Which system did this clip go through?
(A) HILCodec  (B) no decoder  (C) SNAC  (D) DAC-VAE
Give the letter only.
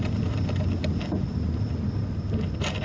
B